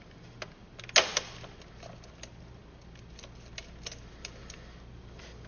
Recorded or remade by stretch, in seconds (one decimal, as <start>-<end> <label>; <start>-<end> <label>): 0.0-5.5 recorded